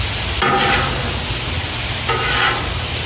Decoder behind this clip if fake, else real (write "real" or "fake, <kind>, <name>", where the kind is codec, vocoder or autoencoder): real